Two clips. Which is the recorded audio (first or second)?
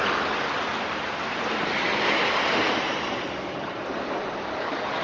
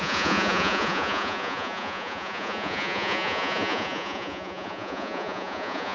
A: first